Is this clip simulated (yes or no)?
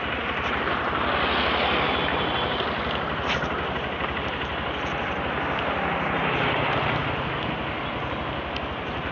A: no